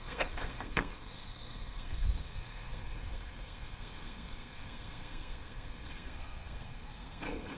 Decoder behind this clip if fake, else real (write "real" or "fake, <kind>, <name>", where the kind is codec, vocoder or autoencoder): fake, codec, SNAC